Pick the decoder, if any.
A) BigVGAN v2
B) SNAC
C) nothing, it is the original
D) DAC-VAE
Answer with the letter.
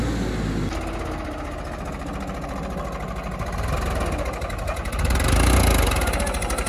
C